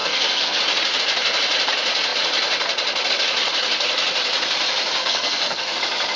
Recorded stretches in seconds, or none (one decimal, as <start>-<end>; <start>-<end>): 0.6-5.0; 5.8-6.2